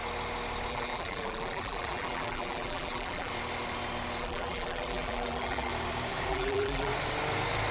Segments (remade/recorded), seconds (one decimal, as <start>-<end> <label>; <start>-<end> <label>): 0.0-0.7 recorded; 0.7-3.3 remade; 3.3-4.2 recorded; 4.2-5.7 remade; 5.7-6.3 recorded; 6.3-6.9 remade; 6.9-7.7 recorded